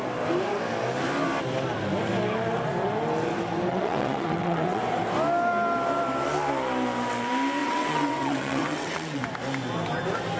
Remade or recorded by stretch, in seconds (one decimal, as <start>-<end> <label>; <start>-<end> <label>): 0.0-3.7 recorded; 3.7-4.8 remade; 4.8-7.6 recorded; 7.6-9.2 remade; 9.2-10.4 recorded